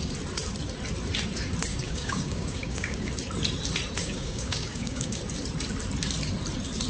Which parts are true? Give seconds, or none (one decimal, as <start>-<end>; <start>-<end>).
0.0-1.7; 3.1-4.0; 5.2-6.9